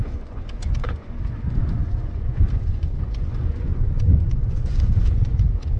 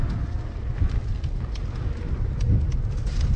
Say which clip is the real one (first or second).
second